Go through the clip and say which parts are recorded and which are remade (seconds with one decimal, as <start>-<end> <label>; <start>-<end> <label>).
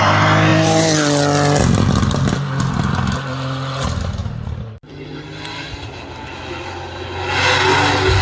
0.0-8.2 recorded